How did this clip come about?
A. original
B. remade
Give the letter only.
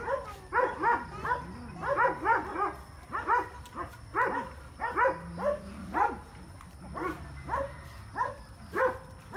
A